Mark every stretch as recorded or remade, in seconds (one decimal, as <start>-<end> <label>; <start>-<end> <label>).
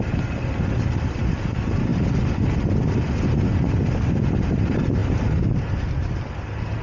0.0-6.8 recorded